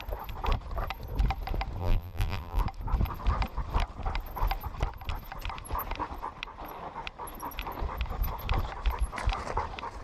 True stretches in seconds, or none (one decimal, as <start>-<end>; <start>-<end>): 0.0-1.8; 2.6-10.0